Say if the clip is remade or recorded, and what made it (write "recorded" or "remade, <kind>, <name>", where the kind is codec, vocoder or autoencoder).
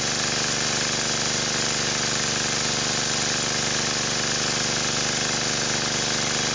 recorded